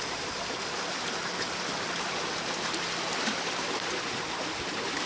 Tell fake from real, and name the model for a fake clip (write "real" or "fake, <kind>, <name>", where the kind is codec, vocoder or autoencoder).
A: fake, vocoder, BigVGAN v2